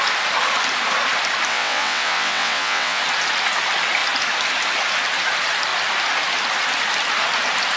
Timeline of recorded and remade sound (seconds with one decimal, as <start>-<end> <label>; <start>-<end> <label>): 0.0-1.5 recorded; 1.5-3.0 remade; 3.0-7.8 recorded